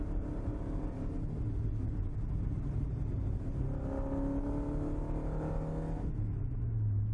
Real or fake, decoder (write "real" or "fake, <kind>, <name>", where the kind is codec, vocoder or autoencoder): real